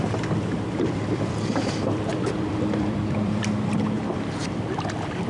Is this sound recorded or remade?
remade